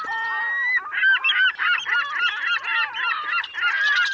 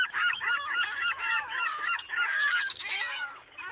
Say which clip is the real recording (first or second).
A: first